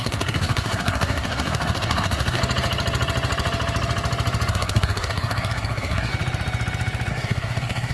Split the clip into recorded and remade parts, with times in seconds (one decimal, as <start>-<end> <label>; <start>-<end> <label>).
0.0-2.4 remade; 2.4-4.5 recorded; 4.5-6.1 remade; 6.1-7.1 recorded; 7.1-7.9 remade